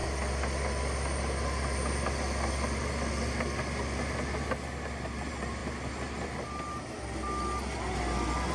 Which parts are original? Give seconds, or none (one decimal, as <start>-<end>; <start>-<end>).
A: 0.0-8.5